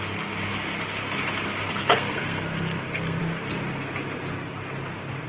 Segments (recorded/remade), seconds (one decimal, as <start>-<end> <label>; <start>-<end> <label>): 0.0-1.8 recorded; 1.8-3.2 remade; 3.2-5.3 recorded